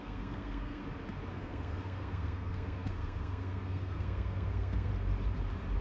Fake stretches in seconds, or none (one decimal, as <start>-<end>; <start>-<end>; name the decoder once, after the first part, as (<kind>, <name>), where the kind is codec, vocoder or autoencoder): 0.0-0.8 (codec, SNAC); 1.3-4.9